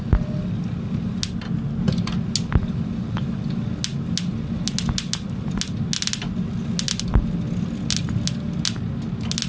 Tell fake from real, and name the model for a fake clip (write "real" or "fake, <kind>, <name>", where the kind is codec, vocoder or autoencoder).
real